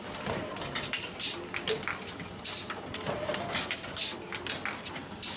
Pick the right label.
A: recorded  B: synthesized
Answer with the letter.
A